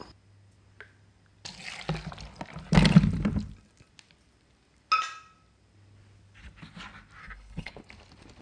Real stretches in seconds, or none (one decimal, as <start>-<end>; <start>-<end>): 0.0-7.2; 7.7-8.4